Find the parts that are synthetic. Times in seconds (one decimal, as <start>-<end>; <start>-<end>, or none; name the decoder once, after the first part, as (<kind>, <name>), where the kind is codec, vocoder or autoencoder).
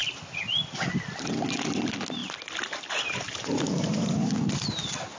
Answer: none